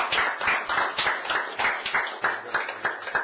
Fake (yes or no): no